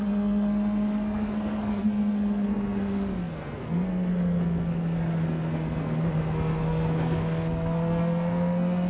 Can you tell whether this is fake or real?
fake